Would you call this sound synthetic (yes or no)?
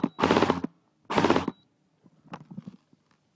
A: no